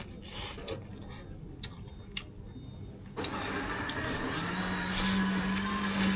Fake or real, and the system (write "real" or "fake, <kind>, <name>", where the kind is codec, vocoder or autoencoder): real